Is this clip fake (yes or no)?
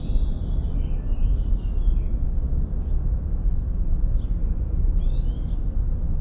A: no